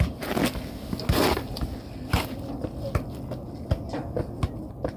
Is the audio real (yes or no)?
yes